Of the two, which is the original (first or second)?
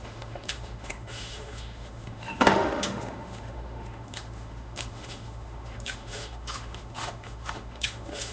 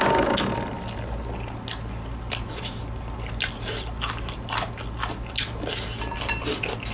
second